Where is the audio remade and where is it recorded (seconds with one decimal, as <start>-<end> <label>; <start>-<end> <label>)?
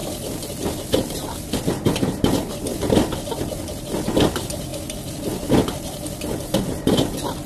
0.0-7.5 recorded